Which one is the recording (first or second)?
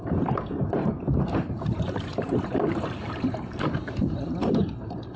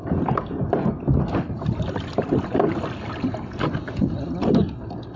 second